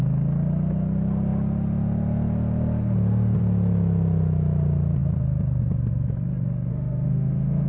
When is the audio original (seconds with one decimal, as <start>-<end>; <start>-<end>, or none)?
0.0-6.7